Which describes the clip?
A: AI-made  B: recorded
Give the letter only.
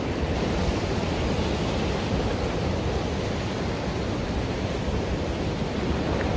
B